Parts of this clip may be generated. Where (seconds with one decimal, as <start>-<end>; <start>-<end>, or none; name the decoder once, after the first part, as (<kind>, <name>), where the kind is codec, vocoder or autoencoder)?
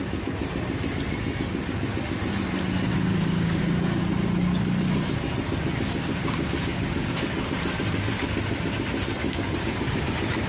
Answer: 2.9-3.6 (codec, DAC); 6.2-7.1; 9.2-10.0